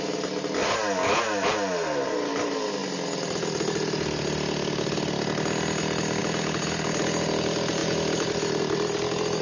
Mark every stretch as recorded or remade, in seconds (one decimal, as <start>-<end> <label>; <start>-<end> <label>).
0.0-9.4 recorded